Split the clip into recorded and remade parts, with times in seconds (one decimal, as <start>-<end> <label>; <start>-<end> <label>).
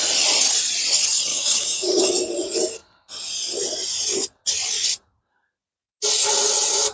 0.0-1.3 recorded; 1.3-2.0 remade; 2.0-6.9 recorded